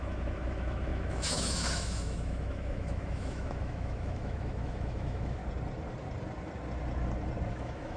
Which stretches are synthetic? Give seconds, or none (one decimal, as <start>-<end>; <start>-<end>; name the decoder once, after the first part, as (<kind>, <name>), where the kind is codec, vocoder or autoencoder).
0.0-5.4 (autoencoder, DAC-VAE); 7.5-8.0